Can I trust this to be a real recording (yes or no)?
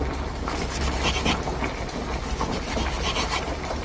yes